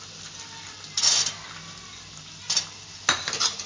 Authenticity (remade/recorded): recorded